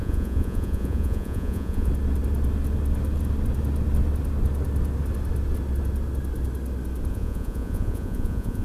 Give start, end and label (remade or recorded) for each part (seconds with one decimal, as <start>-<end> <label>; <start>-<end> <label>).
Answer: 0.0-1.9 remade; 1.9-7.1 recorded; 7.1-8.6 remade